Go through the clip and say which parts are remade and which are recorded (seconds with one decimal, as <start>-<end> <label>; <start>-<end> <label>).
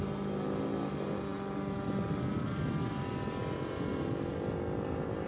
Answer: 0.0-5.3 recorded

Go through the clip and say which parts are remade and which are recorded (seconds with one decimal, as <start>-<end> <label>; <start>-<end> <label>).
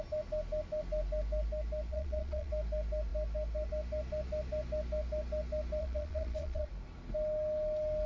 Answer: 0.0-1.9 recorded; 1.9-2.5 remade; 2.5-5.8 recorded; 5.8-6.7 remade; 6.7-8.1 recorded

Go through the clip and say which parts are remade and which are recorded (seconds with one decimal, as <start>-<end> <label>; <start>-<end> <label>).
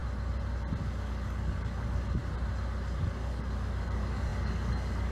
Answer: 0.0-0.8 recorded; 0.8-2.2 remade; 2.2-3.0 recorded; 3.0-5.1 remade